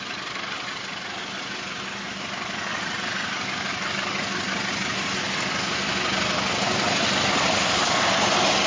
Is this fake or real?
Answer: real